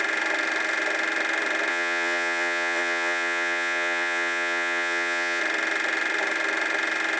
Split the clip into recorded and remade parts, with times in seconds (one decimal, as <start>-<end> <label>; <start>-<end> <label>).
0.0-1.7 recorded; 1.7-5.4 remade; 5.4-7.2 recorded